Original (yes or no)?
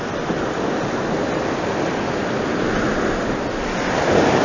yes